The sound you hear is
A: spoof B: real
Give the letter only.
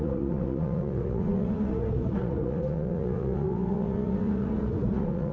A